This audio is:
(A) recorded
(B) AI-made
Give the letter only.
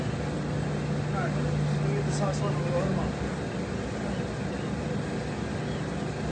A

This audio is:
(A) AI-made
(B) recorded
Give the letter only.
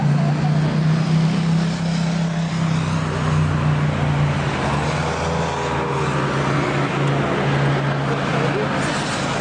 B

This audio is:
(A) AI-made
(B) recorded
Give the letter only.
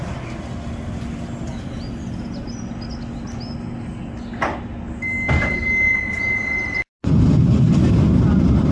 B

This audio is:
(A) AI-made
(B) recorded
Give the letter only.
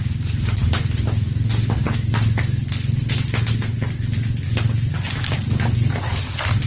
B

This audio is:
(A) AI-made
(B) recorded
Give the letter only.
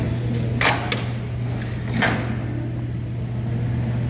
B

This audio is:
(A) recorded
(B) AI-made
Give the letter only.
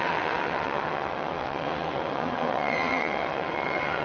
B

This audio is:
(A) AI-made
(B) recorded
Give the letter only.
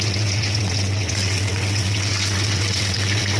A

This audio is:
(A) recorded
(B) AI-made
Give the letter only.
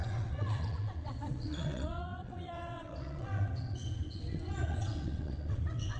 B